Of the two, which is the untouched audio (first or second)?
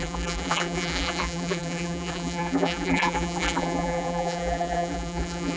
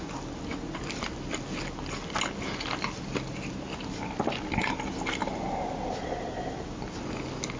second